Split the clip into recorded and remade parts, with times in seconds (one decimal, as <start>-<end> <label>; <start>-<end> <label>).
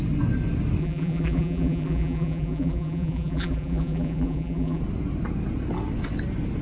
0.0-0.8 recorded; 0.8-4.8 remade; 4.8-6.6 recorded